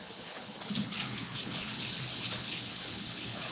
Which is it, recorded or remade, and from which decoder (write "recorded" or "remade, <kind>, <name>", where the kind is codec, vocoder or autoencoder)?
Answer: remade, codec, HILCodec